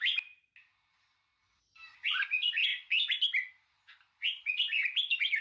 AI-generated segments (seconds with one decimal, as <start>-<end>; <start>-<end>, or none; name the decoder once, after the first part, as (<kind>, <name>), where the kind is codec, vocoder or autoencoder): none